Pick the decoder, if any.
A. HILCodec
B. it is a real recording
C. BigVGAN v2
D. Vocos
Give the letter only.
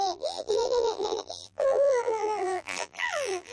C